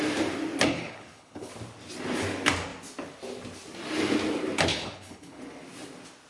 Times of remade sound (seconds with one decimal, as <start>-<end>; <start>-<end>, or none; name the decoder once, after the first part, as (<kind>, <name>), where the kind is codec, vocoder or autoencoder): 0.7-1.5 (codec, HILCodec); 4.7-5.4